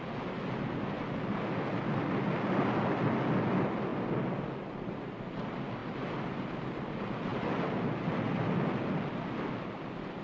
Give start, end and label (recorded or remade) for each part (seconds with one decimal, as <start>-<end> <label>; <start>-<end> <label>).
0.0-10.2 recorded